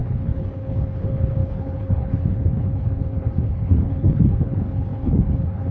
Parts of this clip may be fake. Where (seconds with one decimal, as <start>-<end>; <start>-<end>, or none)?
0.0-5.7